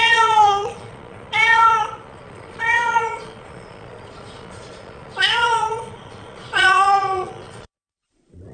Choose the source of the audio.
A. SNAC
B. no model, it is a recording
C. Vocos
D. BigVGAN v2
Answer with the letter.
C